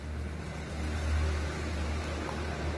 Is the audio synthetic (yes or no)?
no